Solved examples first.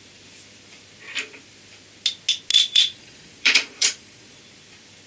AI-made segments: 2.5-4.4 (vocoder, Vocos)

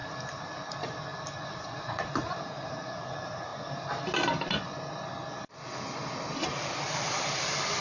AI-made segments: 1.5-3.5 (vocoder, Vocos)

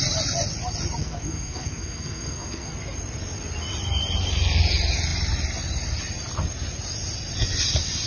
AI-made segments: 1.0-2.7 (codec, SNAC)

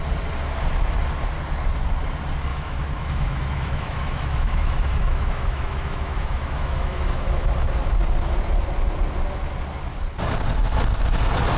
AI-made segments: 2.5-7.5 (autoencoder, DAC-VAE)